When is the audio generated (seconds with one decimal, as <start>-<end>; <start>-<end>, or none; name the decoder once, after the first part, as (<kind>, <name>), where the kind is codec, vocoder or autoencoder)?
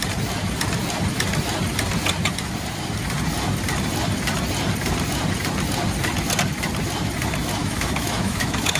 7.6-8.8 (autoencoder, DAC-VAE)